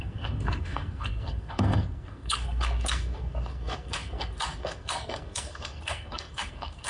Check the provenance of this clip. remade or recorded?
remade